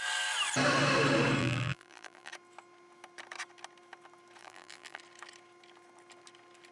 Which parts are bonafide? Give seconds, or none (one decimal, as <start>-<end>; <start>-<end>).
0.0-1.4; 2.3-4.4; 5.0-6.7